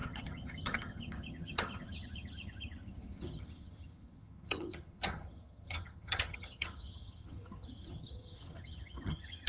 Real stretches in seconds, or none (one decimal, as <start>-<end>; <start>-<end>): none